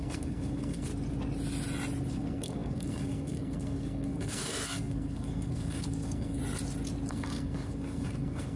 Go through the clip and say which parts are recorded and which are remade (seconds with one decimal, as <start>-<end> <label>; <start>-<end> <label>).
0.0-0.9 remade; 0.9-2.1 recorded; 2.1-6.4 remade; 6.4-7.1 recorded; 7.1-8.6 remade